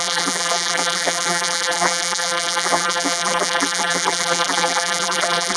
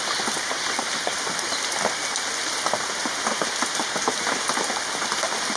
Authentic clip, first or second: second